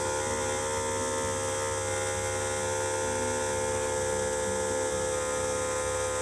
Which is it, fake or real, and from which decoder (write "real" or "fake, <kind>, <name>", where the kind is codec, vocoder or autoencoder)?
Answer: real